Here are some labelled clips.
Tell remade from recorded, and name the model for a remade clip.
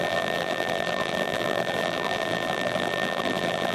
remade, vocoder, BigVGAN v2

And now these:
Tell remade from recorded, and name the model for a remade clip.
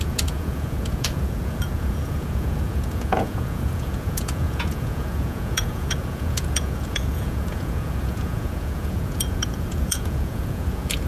remade, vocoder, Vocos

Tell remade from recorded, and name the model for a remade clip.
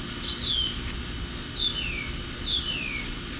recorded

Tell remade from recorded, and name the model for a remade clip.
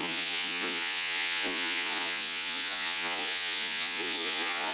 remade, vocoder, Vocos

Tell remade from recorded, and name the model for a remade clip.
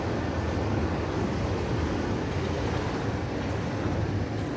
recorded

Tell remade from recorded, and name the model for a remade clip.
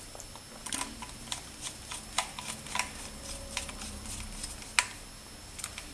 recorded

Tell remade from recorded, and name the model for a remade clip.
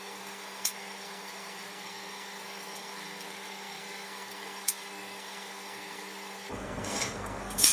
remade, codec, SNAC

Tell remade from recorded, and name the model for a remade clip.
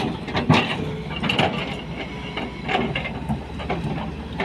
recorded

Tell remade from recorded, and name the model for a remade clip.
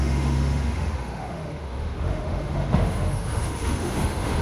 remade, autoencoder, DAC-VAE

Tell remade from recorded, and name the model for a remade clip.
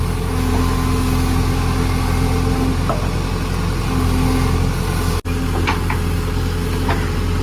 recorded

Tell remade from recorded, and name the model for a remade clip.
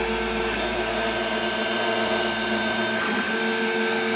recorded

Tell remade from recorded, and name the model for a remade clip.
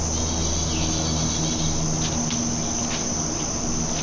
recorded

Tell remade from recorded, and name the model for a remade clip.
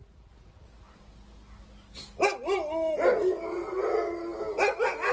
recorded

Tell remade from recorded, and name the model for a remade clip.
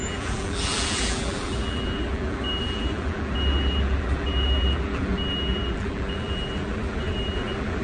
remade, vocoder, BigVGAN v2